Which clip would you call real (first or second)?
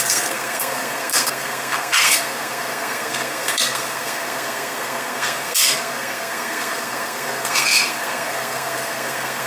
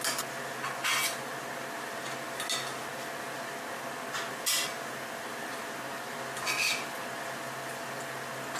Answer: second